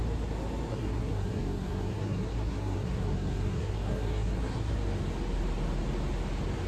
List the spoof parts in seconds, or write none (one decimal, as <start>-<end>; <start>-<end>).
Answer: 0.7-4.7